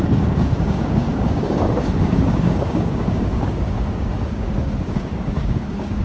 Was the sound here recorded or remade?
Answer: remade